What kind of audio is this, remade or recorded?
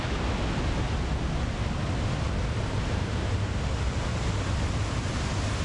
recorded